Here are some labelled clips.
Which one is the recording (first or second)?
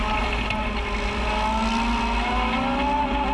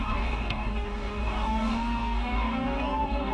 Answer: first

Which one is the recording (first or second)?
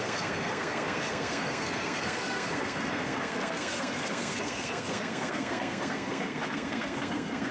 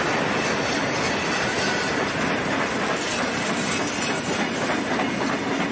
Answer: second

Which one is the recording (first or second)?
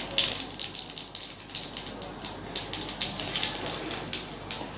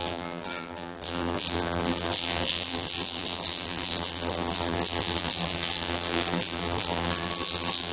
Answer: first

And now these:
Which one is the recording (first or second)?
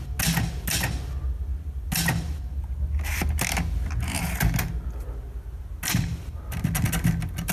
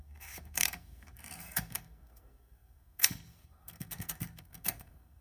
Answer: first